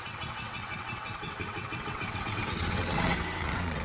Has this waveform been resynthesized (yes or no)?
yes